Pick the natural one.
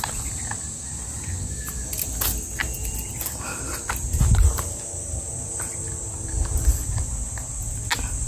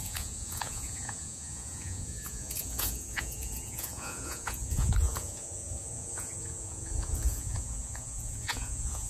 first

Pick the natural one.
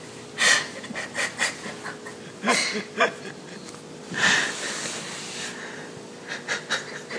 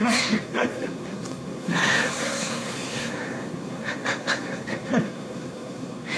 first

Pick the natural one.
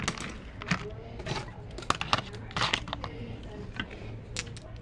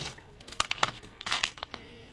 first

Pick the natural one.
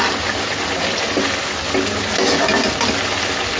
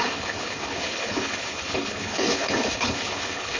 first